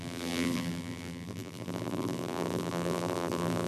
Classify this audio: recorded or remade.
remade